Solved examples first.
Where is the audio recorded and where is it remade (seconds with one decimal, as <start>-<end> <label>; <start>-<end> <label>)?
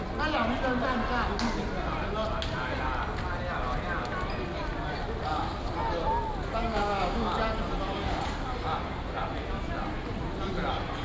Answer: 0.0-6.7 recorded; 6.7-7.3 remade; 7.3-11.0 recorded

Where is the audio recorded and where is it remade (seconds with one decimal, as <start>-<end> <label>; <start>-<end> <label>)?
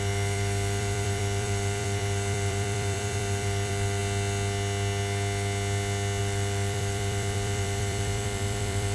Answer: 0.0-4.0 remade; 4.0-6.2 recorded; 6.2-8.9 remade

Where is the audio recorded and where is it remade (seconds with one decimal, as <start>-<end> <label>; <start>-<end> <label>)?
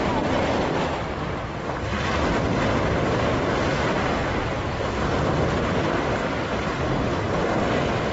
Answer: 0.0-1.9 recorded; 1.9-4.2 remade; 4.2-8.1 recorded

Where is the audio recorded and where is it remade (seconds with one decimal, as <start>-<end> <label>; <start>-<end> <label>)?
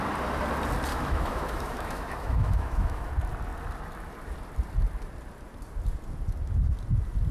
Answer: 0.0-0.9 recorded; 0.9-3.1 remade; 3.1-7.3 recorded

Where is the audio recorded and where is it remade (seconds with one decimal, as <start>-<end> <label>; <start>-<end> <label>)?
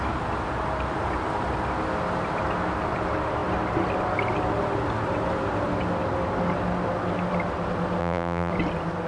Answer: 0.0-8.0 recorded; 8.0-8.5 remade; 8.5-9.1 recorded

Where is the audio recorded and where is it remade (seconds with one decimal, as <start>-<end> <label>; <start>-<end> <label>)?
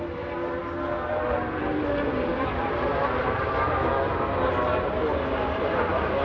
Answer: 0.0-6.2 recorded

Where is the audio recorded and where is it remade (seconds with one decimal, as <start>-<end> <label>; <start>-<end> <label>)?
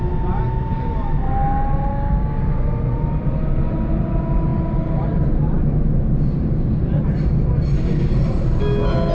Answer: 0.0-1.9 recorded; 1.9-2.4 remade; 2.4-9.1 recorded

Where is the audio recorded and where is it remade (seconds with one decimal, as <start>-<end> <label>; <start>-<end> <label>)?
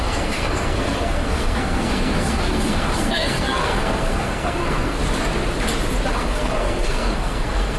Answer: 0.0-5.0 remade; 5.0-6.1 recorded; 6.1-7.8 remade